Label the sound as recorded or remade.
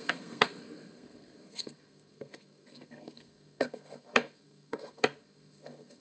remade